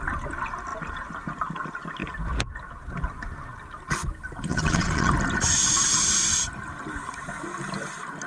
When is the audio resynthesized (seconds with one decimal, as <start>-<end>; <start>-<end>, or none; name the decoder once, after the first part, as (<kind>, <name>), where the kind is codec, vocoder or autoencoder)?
4.5-5.1 (vocoder, Vocos)